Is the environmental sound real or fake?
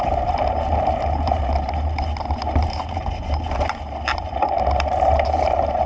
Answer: fake